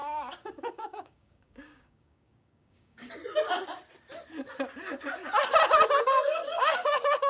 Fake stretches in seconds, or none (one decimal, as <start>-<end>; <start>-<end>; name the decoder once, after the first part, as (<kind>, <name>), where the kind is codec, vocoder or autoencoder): 0.0-3.2 (codec, DAC); 6.0-7.3